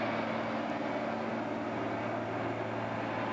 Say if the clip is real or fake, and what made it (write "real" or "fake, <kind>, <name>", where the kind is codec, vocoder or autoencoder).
real